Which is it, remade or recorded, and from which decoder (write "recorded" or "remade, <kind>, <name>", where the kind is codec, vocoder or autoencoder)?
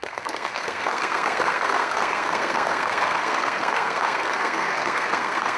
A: remade, codec, SNAC